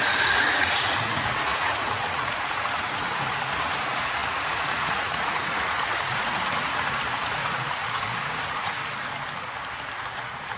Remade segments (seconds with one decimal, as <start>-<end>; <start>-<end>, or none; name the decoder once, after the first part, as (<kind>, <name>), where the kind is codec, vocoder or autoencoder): 0.0-8.8 (vocoder, Vocos); 10.0-10.6